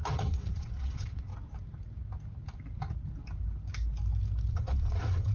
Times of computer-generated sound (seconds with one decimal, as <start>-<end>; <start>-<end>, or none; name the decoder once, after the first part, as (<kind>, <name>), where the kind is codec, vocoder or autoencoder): 0.0-1.3 (vocoder, WaveNeXt); 4.5-5.3